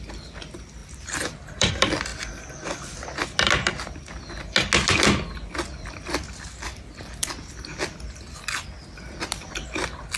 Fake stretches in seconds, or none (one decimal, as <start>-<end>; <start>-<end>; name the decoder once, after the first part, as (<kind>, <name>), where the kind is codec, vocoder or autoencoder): 0.8-1.7 (vocoder, BigVGAN v2)